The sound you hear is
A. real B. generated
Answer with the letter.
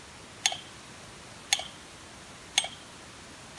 A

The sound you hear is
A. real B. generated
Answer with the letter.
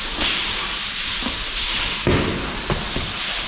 A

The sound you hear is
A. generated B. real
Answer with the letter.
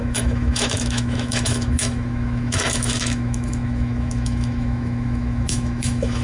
A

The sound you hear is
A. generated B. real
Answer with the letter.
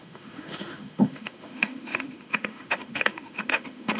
A